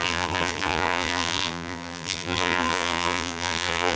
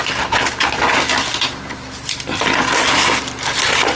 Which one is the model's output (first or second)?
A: first